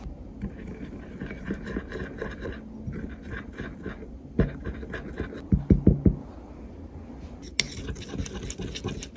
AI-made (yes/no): no